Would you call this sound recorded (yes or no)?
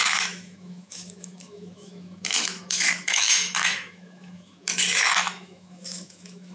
no